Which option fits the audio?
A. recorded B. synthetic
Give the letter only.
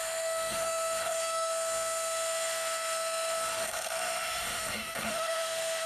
B